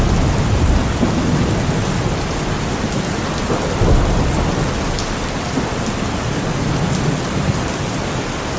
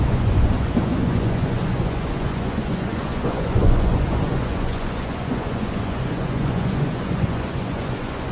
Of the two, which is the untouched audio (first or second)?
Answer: first